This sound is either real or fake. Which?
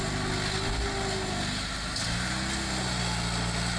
real